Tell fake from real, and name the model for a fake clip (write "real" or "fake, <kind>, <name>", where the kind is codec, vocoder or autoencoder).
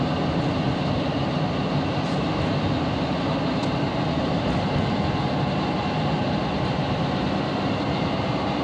real